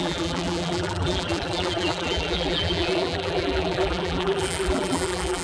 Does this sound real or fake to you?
fake